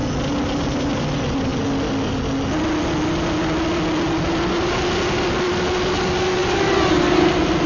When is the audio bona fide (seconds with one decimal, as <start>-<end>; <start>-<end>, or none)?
0.0-7.7